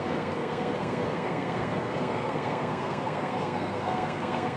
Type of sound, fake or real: fake